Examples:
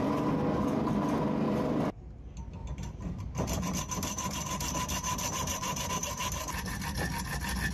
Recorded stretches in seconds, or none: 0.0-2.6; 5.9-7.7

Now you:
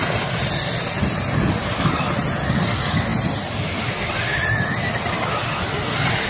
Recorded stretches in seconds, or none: 0.0-6.3

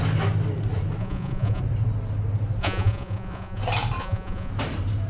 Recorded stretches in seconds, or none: 0.0-1.0; 1.6-2.6; 3.6-4.0; 4.5-5.1

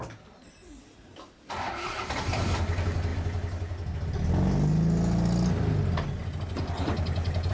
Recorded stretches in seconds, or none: 0.0-7.5

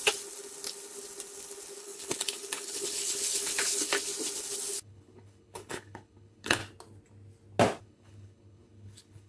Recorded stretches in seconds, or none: 0.0-1.8; 4.1-4.7; 6.6-7.8